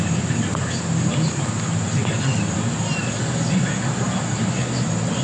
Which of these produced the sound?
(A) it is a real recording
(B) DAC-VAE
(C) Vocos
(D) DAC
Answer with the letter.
A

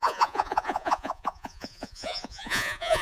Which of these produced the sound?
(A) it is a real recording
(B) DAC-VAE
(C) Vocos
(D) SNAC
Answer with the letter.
C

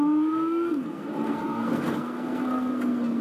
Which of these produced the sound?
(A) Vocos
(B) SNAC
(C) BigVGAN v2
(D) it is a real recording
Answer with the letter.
B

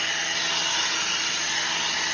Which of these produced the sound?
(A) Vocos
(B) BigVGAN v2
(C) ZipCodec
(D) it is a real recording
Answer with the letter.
D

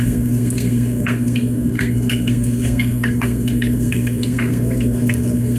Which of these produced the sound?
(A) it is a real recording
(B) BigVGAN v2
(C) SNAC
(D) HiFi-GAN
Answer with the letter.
C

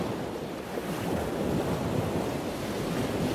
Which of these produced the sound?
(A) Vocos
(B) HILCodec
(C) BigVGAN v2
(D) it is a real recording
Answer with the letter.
D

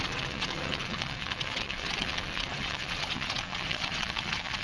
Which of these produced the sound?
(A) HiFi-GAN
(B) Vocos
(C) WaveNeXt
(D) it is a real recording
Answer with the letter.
C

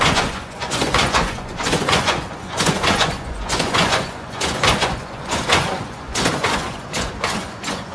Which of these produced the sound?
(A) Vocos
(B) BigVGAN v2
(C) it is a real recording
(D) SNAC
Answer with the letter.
A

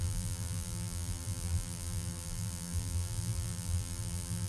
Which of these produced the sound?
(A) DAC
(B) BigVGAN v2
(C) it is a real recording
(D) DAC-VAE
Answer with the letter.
B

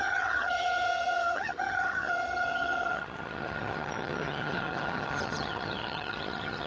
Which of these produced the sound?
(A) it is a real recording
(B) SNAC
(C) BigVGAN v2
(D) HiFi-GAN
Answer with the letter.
D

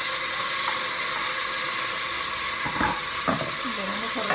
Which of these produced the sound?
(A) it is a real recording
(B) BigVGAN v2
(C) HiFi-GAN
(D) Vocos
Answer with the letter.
A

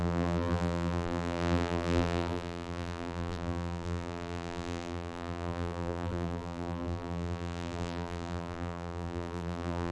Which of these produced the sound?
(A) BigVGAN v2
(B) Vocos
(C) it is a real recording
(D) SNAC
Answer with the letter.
A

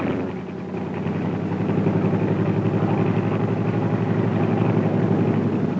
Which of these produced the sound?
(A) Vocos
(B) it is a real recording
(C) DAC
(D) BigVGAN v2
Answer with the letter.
B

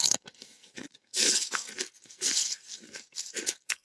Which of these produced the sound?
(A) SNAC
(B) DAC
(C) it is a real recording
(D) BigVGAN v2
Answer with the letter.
A